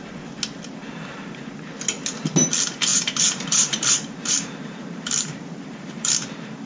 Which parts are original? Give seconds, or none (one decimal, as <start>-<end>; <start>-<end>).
0.0-2.9; 6.1-6.7